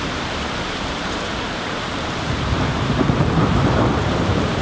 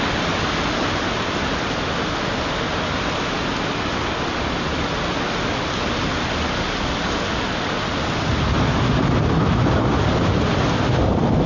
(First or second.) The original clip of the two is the second